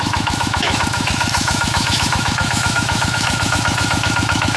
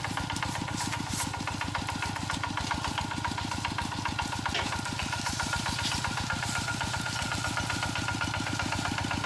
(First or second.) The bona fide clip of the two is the second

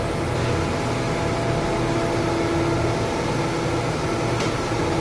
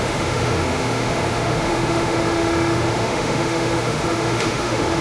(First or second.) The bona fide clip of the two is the first